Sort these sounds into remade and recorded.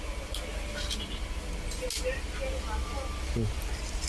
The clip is recorded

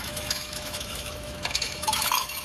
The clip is remade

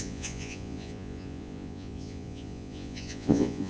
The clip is remade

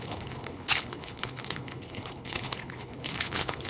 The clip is remade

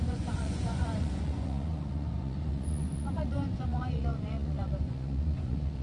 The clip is remade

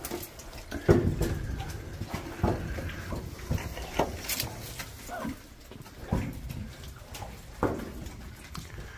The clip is recorded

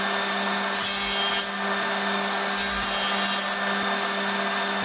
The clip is recorded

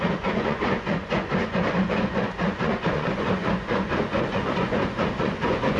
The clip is remade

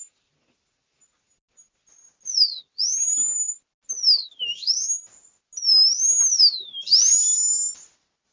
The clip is recorded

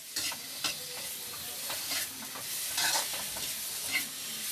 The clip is recorded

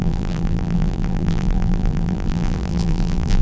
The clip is remade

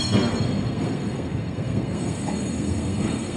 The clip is remade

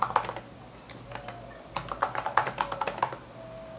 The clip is recorded